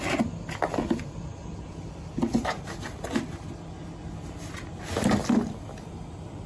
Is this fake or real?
real